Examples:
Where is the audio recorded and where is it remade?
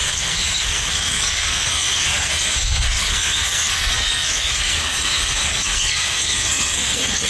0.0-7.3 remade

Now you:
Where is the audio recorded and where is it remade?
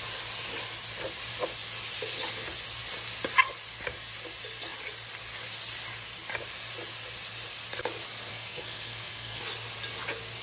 0.0-8.3 recorded; 8.3-9.4 remade; 9.4-10.4 recorded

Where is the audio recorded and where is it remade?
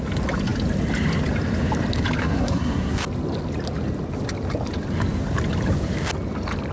0.0-2.2 recorded; 2.2-2.9 remade; 2.9-6.7 recorded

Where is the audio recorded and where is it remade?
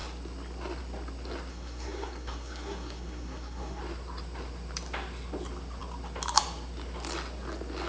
0.0-1.5 recorded; 1.5-3.8 remade; 3.8-7.9 recorded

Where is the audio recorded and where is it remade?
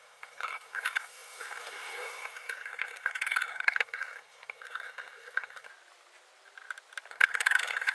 0.0-5.7 remade; 5.7-7.1 recorded; 7.1-7.9 remade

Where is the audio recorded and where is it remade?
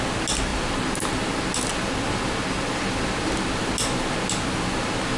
0.0-5.2 recorded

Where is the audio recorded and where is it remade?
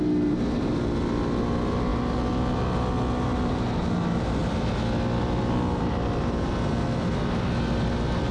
0.0-8.3 recorded